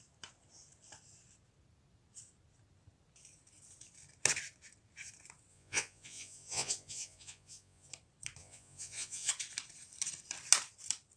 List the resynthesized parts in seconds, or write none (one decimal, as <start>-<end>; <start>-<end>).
5.5-7.9; 8.4-9.3